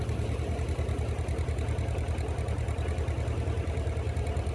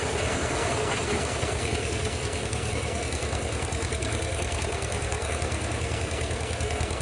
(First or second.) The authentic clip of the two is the first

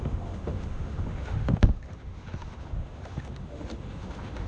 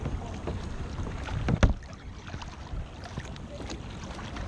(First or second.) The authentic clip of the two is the second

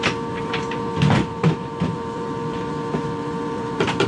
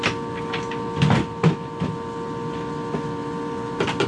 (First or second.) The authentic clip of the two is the second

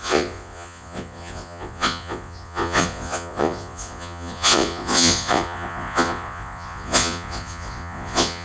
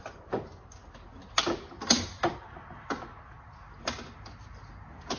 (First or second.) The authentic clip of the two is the second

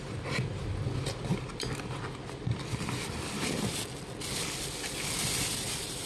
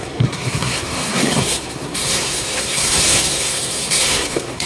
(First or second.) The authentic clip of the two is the first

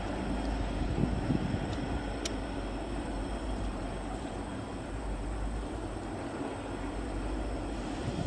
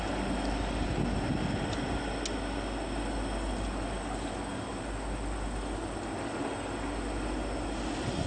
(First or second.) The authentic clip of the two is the second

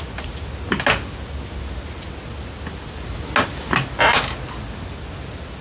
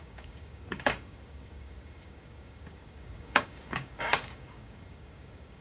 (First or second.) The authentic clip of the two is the first